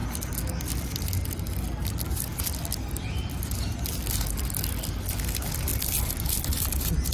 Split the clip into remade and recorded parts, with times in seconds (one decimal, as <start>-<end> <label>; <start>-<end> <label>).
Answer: 0.0-7.1 recorded